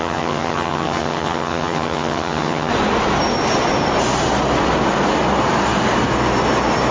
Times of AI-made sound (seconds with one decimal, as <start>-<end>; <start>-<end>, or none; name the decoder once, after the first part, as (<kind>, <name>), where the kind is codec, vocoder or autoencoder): 0.0-2.7 (vocoder, HiFi-GAN)